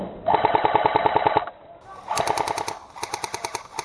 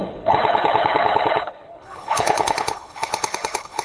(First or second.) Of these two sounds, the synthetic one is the second